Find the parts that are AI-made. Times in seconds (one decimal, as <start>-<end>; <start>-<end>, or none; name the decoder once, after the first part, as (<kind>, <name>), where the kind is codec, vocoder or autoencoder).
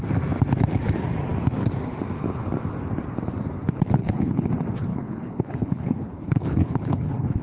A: 4.0-4.5 (codec, HILCodec); 4.9-7.4